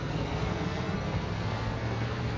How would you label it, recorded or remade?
remade